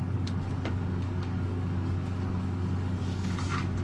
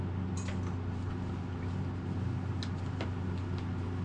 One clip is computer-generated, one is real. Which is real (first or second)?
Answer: second